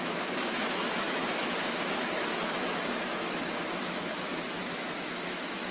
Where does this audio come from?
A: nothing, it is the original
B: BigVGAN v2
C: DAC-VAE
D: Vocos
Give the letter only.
C